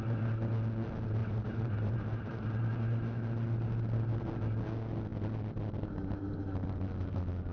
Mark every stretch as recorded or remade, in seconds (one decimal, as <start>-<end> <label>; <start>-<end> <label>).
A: 0.0-1.2 recorded; 1.2-2.5 remade; 2.5-7.5 recorded